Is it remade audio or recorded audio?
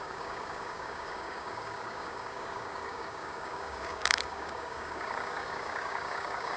remade